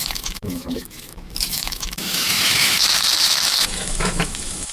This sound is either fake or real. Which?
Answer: fake